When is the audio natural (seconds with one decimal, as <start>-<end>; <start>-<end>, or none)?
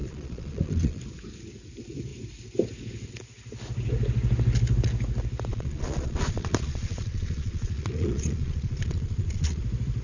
1.0-5.5; 9.6-10.0